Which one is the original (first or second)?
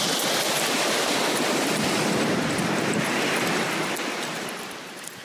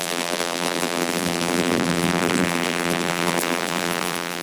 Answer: first